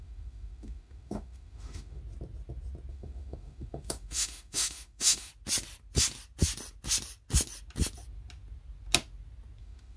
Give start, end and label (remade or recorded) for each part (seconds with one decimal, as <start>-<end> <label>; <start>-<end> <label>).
0.0-2.0 remade; 2.0-2.9 recorded; 2.9-5.3 remade; 5.3-9.6 recorded; 9.6-10.0 remade